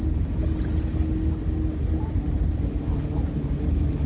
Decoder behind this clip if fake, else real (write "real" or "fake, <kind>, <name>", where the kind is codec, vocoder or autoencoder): real